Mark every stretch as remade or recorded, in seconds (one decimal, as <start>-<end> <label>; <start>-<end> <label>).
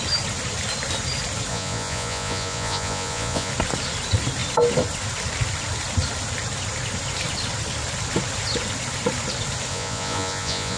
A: 0.0-1.5 recorded; 1.5-3.5 remade; 3.5-9.7 recorded; 9.7-10.8 remade